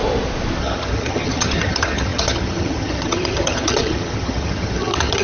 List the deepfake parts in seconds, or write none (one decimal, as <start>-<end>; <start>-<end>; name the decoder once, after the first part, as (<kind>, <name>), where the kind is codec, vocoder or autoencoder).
0.6-5.2 (vocoder, HiFi-GAN)